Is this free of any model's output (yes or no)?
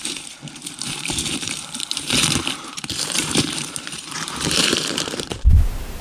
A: no